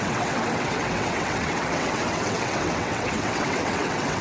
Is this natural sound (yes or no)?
no